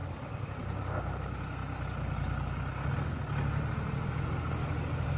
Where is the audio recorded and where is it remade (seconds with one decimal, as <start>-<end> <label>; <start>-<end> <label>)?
0.0-4.6 recorded; 4.6-5.2 remade